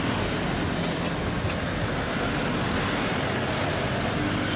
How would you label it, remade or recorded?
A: recorded